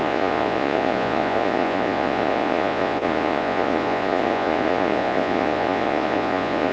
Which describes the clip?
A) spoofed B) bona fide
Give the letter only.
A